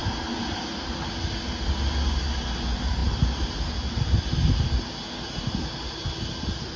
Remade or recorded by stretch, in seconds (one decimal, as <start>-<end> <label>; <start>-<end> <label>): 0.0-6.8 recorded